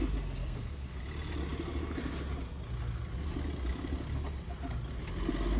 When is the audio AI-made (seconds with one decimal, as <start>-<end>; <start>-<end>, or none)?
0.4-1.0

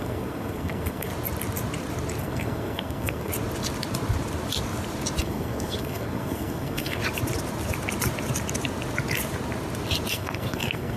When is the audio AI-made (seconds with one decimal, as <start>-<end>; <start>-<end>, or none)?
0.0-1.1; 2.2-3.3; 5.2-7.0; 10.1-11.0

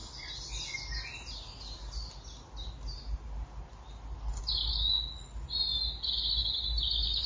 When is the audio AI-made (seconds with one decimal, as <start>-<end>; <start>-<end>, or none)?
none

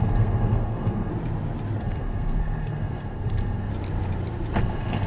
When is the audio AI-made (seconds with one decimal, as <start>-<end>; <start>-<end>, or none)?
0.0-1.1; 1.8-3.7; 4.6-5.1

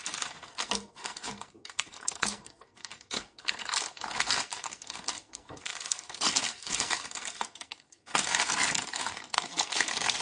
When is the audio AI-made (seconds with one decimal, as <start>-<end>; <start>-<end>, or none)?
0.0-10.2

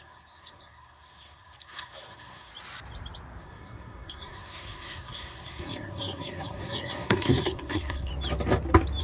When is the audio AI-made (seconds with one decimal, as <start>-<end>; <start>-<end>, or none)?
0.0-2.5; 3.4-8.1